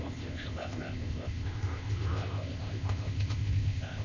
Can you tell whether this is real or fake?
fake